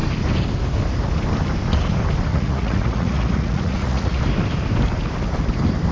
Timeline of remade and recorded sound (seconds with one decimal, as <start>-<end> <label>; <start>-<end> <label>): 0.0-2.3 recorded; 2.3-4.2 remade; 4.2-5.9 recorded

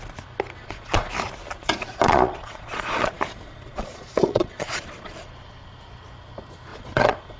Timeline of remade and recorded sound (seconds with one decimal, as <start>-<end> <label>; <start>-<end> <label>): 0.0-0.6 recorded; 0.6-1.1 remade; 1.1-1.6 recorded; 1.6-5.3 remade; 5.3-6.7 recorded; 6.7-7.4 remade

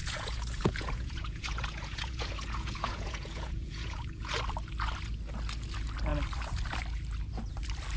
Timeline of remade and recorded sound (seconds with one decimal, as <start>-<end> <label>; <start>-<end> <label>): 0.0-4.3 remade; 4.3-8.0 recorded

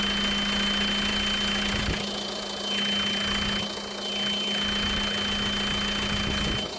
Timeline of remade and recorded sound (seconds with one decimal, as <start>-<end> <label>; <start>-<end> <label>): 0.0-6.8 recorded

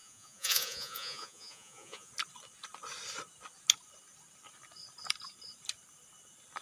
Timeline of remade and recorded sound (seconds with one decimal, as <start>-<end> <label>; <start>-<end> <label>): 0.0-2.1 remade; 2.1-6.6 recorded

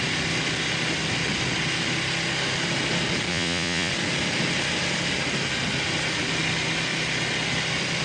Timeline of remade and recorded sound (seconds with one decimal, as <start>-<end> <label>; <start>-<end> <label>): 0.0-3.3 recorded; 3.3-3.9 remade; 3.9-8.0 recorded

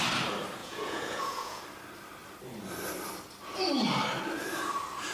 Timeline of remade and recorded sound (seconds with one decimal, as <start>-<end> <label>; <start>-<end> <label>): 0.0-0.6 recorded; 0.6-1.6 remade; 1.6-5.1 recorded